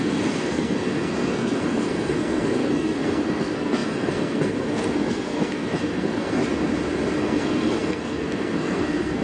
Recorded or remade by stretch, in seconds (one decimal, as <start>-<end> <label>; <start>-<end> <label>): 0.0-6.4 remade; 6.4-7.2 recorded; 7.2-9.2 remade